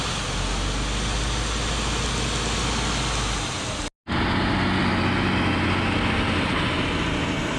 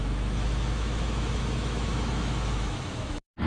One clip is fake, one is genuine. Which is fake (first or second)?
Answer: second